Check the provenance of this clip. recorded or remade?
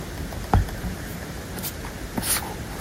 recorded